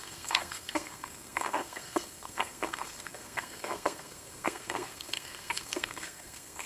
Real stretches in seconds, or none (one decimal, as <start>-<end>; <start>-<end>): none